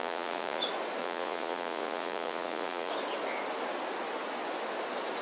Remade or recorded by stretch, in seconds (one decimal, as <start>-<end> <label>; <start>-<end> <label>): 0.0-0.6 remade; 0.6-1.0 recorded; 1.0-2.9 remade; 2.9-5.2 recorded